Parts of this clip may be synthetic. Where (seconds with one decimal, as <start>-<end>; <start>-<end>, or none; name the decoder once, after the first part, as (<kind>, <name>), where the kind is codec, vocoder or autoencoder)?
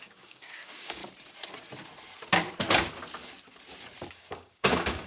0.0-1.0 (codec, DAC); 4.1-5.1